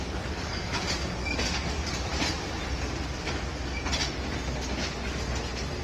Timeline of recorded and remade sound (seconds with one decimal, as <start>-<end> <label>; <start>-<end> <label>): 0.0-2.1 remade; 2.1-5.8 recorded